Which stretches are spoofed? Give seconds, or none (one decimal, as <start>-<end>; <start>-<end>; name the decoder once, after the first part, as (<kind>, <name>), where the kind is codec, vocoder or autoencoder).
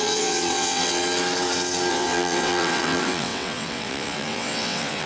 0.0-1.0 (vocoder, WaveNeXt); 1.9-5.1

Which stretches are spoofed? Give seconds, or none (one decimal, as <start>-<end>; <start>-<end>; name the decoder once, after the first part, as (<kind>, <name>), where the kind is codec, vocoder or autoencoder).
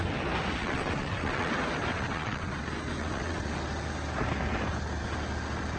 0.6-1.5 (vocoder, WaveNeXt); 1.9-2.5; 3.0-3.5